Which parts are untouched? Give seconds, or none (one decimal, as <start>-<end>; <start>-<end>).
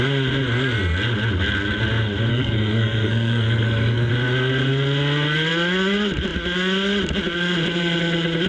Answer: 0.0-2.3; 4.1-8.5